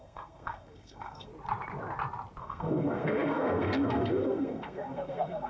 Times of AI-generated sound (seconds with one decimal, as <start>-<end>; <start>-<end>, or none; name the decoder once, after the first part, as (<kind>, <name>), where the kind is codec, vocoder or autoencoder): 0.0-1.3 (codec, SNAC); 2.4-5.5